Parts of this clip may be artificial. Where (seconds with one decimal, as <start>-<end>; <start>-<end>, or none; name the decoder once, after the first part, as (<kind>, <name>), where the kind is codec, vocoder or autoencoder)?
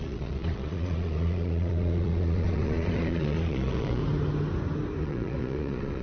0.0-4.0 (vocoder, Vocos); 5.0-6.0